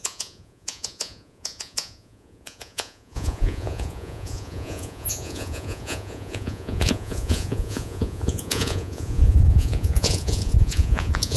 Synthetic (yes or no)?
yes